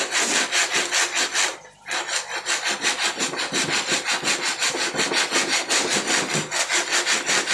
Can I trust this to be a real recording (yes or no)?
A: yes